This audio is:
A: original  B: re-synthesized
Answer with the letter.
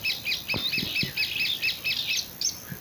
A